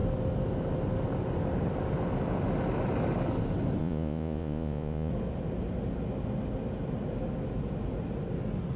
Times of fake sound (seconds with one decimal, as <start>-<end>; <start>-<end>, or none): 3.8-5.1